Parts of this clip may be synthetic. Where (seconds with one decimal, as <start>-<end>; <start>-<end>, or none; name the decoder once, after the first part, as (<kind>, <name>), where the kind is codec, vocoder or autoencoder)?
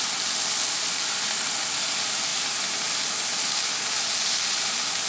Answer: none